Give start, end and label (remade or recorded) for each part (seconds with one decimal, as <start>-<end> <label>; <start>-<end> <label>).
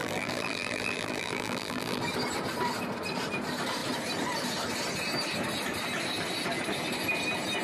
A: 0.0-2.0 remade; 2.0-7.6 recorded